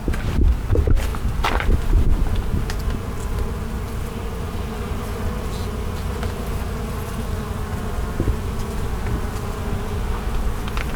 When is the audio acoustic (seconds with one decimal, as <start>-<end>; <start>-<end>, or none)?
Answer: 0.0-11.0